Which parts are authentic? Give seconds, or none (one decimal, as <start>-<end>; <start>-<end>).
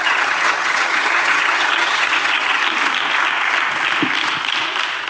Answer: 2.6-5.1